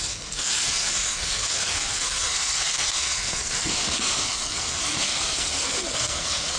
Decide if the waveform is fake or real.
fake